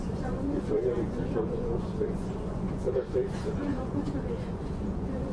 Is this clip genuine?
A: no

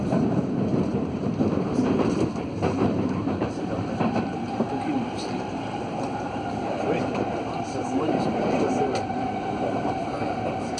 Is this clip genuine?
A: no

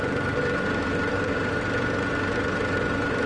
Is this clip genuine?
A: yes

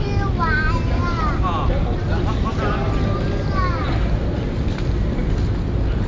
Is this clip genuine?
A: yes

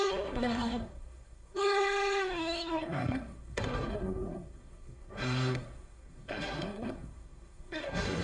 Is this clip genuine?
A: no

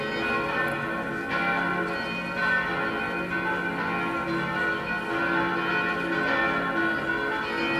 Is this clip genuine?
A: yes